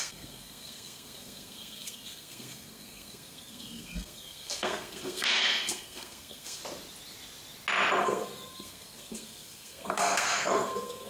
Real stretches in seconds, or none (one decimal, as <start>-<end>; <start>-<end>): 6.6-8.0